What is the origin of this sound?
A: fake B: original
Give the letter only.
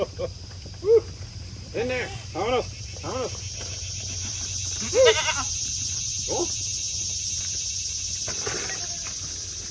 B